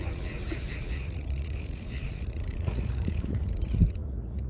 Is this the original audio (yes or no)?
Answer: no